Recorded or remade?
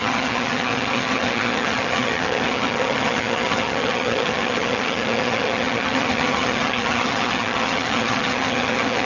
remade